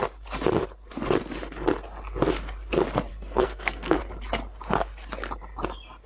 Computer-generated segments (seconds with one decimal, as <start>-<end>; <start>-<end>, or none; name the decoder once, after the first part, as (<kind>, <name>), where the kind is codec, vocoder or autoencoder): 3.1-4.0 (codec, SNAC)